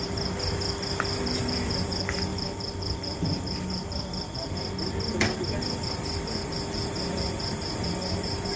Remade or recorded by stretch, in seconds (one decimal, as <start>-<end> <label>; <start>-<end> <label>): 0.0-8.6 remade